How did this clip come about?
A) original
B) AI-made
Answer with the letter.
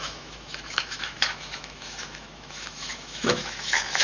B